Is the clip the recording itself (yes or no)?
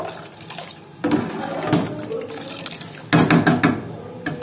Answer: yes